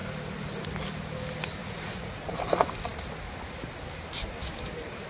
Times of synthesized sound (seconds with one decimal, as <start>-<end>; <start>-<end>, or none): 1.6-2.4